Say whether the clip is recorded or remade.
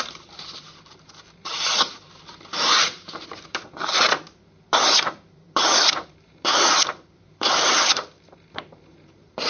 remade